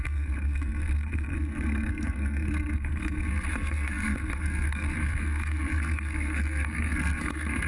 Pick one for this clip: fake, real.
fake